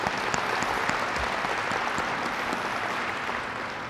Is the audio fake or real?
real